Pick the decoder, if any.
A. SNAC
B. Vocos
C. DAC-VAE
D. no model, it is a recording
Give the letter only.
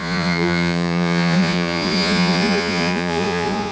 B